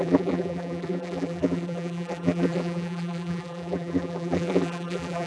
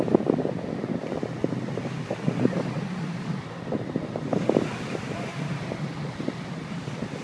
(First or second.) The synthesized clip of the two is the first